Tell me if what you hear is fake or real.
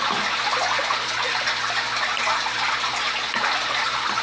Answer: real